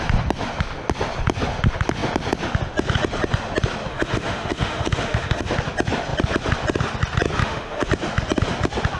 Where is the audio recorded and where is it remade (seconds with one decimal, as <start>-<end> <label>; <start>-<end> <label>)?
0.0-3.9 recorded; 3.9-5.5 remade; 5.5-7.4 recorded; 7.4-7.9 remade; 7.9-9.0 recorded